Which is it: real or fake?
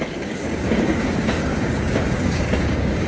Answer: fake